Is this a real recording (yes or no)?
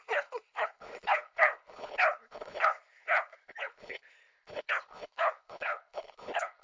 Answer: no